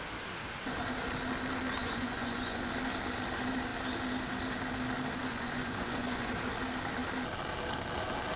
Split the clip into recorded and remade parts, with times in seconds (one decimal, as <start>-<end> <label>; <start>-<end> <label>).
0.0-1.8 recorded; 1.8-2.7 remade; 2.7-5.2 recorded; 5.2-6.3 remade; 6.3-8.4 recorded